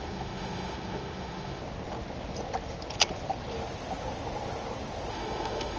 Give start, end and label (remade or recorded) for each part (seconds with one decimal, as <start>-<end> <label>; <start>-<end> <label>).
0.0-1.6 remade; 1.6-5.1 recorded; 5.1-5.8 remade